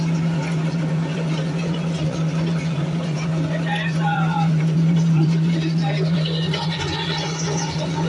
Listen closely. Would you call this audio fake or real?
fake